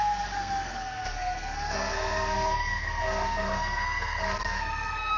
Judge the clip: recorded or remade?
remade